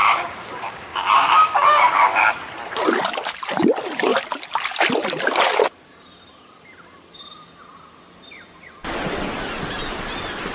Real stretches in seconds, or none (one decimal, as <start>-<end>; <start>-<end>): 2.2-10.5